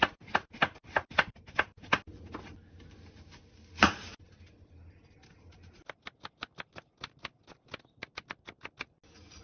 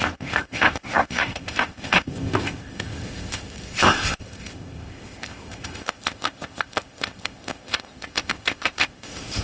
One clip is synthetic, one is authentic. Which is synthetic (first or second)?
second